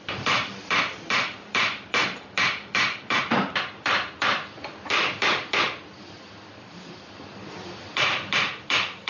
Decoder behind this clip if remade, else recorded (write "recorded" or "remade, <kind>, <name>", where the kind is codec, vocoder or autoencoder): remade, vocoder, BigVGAN v2